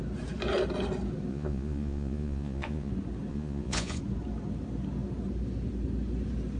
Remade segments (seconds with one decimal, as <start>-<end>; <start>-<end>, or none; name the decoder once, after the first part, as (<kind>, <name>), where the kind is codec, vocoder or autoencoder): 1.3-2.9 (vocoder, Vocos); 3.3-4.0